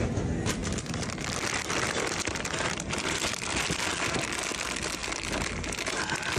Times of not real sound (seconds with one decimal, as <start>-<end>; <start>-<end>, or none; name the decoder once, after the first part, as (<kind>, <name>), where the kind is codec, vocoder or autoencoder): 0.6-4.4 (vocoder, BigVGAN v2); 5.0-5.5